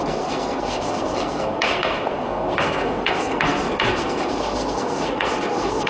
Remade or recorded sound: remade